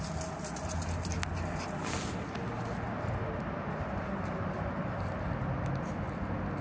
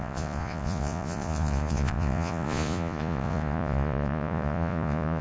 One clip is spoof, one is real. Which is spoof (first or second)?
second